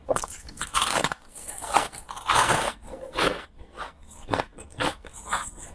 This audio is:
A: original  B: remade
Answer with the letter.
B